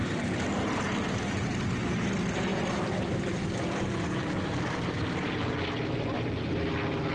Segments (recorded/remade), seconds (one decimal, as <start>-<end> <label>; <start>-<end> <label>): 0.0-2.1 remade; 2.1-2.5 recorded; 2.5-5.4 remade; 5.4-7.1 recorded